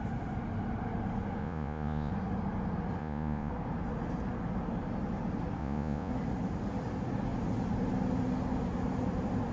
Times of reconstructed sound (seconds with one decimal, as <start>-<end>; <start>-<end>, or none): 1.4-2.1; 3.0-3.5; 5.6-6.1